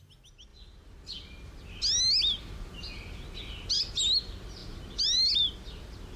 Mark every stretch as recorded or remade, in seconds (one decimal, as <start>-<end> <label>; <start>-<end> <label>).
0.0-6.2 recorded